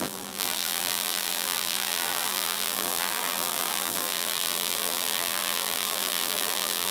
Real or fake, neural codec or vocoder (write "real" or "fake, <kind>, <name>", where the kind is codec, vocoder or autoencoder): fake, vocoder, BigVGAN v2